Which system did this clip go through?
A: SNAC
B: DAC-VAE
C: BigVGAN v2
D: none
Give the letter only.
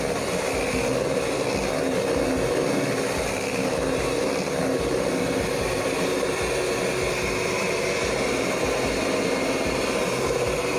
D